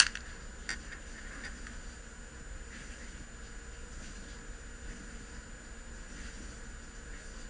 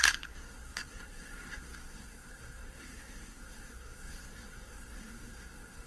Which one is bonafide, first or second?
first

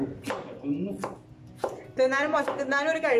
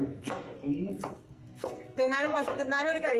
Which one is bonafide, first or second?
first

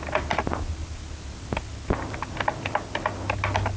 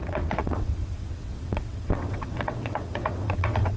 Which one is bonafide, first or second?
first